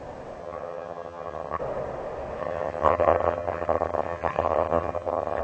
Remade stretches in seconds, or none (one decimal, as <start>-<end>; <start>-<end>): 0.4-1.6; 2.4-5.4